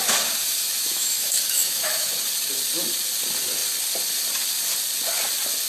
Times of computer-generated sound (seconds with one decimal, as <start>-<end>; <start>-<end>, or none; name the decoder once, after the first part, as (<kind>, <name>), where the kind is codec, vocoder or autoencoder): 0.4-2.1 (autoencoder, DAC-VAE)